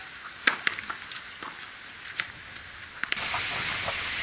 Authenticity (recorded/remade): recorded